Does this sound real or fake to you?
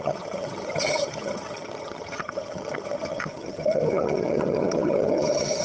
fake